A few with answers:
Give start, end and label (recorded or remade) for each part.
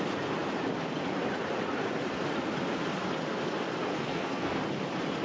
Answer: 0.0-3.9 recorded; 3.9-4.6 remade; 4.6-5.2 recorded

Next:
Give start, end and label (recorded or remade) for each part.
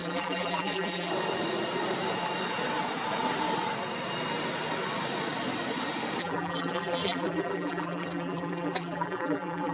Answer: 0.0-1.1 remade; 1.1-6.2 recorded; 6.2-9.7 remade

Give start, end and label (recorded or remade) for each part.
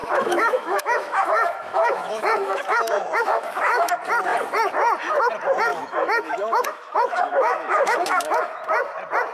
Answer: 0.0-3.9 remade; 3.9-5.7 recorded; 5.7-8.6 remade; 8.6-9.3 recorded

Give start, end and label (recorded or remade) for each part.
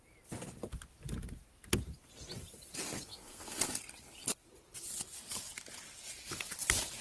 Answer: 0.0-3.1 recorded; 3.1-3.7 remade; 3.7-7.0 recorded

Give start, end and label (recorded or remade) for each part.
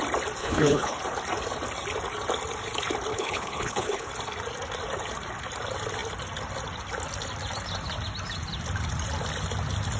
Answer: 0.0-0.4 recorded; 0.4-1.0 remade; 1.0-3.1 recorded; 3.1-4.1 remade; 4.1-10.0 recorded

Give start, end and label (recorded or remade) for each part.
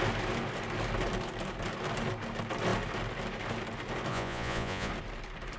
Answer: 0.0-4.1 recorded; 4.1-4.9 remade; 4.9-5.6 recorded